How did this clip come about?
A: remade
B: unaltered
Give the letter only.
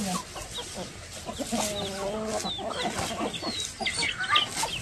B